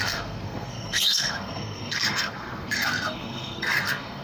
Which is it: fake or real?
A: fake